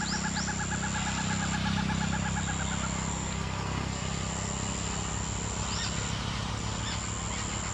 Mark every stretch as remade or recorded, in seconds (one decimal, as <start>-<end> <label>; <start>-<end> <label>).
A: 0.0-3.1 recorded; 3.1-4.0 remade; 4.0-7.7 recorded